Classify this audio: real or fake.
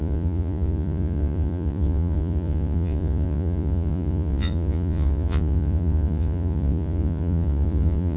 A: fake